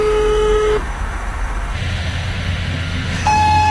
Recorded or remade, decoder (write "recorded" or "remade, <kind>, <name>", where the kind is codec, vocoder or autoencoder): remade, autoencoder, DAC-VAE